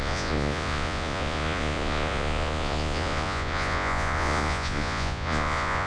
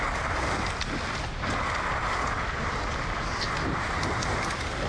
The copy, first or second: first